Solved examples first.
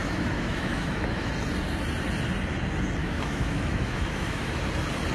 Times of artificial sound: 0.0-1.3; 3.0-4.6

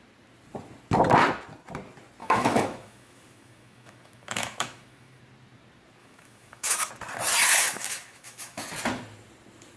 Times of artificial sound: 2.2-5.2; 6.0-6.9; 7.6-8.6

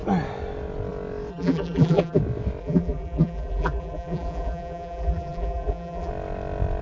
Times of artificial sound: 1.3-2.2; 2.6-6.1